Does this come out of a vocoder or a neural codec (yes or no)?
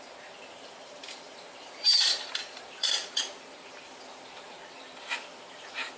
yes